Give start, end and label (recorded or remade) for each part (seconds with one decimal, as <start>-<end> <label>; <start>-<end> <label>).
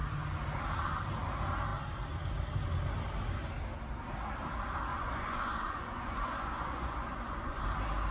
0.0-4.9 recorded; 4.9-7.6 remade; 7.6-8.1 recorded